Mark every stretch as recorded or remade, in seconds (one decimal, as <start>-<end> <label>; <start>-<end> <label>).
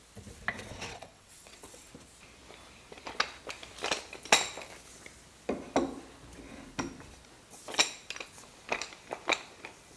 0.0-0.7 recorded; 0.7-1.9 remade; 1.9-10.0 recorded